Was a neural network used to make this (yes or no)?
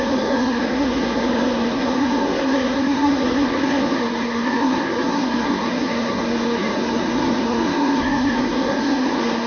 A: yes